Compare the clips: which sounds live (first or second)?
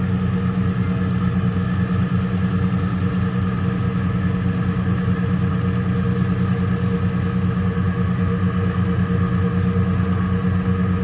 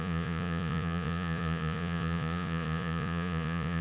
first